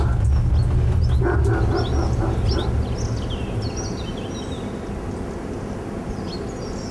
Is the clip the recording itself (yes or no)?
yes